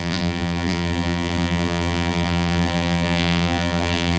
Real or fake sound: fake